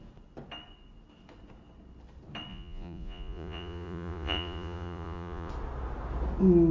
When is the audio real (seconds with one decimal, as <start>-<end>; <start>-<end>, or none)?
0.0-2.5; 5.5-6.7